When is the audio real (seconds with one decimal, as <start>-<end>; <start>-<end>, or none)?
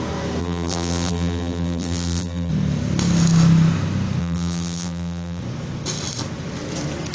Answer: 0.0-0.4; 2.5-4.2; 5.4-7.1